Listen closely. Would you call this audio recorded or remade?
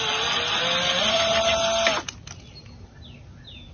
recorded